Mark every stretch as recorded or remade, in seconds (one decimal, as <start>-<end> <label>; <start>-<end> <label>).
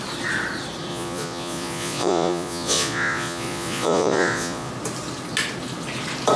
0.0-0.9 recorded; 0.9-4.7 remade; 4.7-6.4 recorded